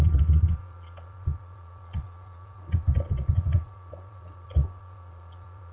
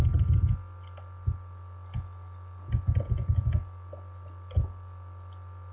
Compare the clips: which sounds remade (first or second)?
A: first